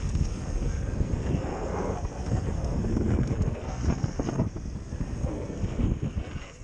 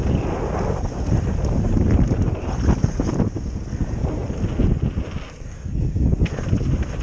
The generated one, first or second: first